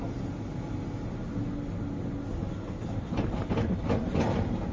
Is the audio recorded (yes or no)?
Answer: yes